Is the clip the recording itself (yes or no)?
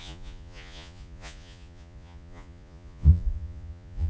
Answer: no